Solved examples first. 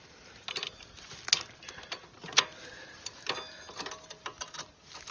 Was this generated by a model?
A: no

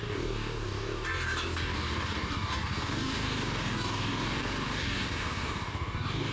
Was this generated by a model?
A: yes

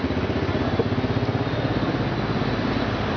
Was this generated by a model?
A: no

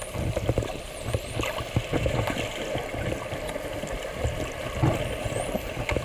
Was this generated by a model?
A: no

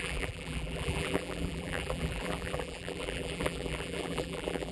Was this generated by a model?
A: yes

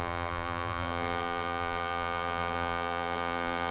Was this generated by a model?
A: yes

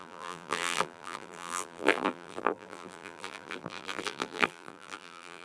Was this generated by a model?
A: yes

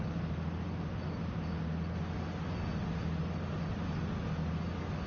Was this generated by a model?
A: no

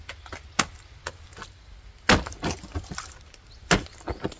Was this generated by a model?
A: no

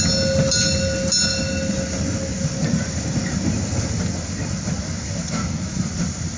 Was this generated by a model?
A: no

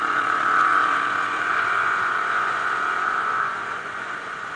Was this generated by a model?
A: yes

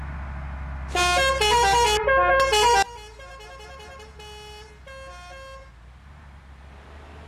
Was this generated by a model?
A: no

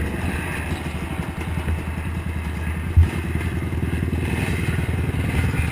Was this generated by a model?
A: no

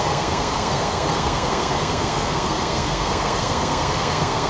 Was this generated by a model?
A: yes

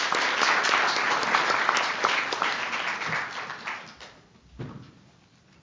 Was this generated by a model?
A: no